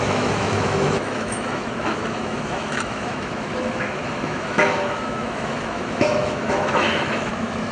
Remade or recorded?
remade